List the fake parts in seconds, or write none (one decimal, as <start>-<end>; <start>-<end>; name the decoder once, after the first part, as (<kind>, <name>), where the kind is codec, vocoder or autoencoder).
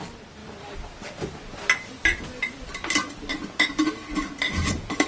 none